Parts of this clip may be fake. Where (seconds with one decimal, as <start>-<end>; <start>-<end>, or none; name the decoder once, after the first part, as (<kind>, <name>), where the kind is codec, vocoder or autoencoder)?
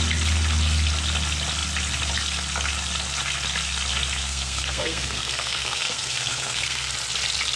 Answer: 4.2-6.9 (codec, SNAC)